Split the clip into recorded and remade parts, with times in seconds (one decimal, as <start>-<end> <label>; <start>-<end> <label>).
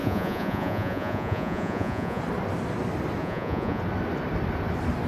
0.0-2.2 remade; 2.2-3.2 recorded; 3.2-3.8 remade; 3.8-5.1 recorded